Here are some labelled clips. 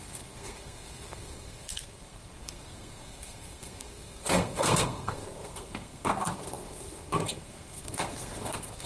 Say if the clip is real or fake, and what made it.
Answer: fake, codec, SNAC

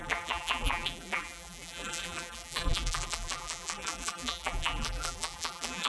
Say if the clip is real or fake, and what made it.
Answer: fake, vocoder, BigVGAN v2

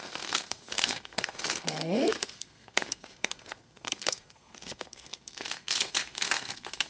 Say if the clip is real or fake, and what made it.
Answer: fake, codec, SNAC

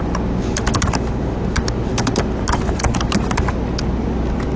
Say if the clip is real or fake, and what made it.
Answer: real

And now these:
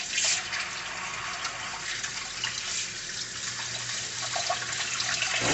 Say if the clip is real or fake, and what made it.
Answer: real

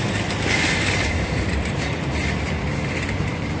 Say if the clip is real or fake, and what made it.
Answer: fake, vocoder, BigVGAN v2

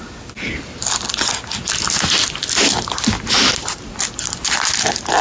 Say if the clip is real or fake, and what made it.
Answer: real